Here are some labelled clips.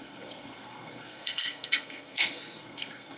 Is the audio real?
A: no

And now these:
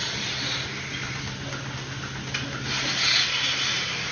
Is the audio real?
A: yes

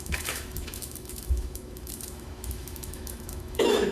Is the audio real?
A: no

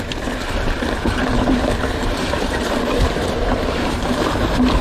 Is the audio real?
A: no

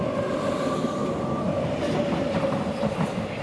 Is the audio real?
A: yes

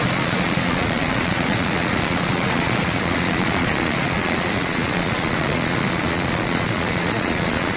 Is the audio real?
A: no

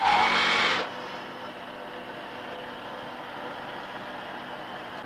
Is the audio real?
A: yes